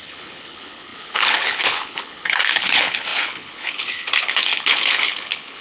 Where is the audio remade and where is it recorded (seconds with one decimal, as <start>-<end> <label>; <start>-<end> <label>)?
0.0-5.6 remade